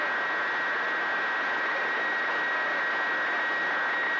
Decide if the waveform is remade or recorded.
recorded